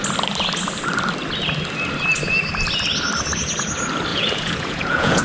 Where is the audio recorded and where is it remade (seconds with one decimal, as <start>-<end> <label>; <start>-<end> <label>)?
0.0-4.1 recorded; 4.1-5.2 remade